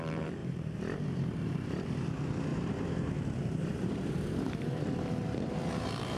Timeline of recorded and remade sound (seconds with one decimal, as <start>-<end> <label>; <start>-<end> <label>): 0.0-0.4 recorded; 0.4-2.0 remade; 2.0-2.5 recorded; 2.5-6.2 remade